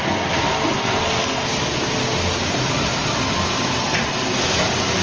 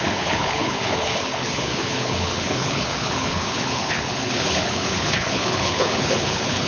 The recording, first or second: first